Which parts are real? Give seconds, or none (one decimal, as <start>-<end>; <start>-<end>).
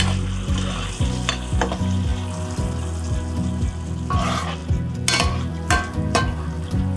0.0-7.0